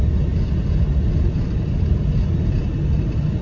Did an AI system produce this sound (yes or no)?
no